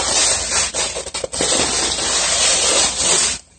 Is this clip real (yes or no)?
yes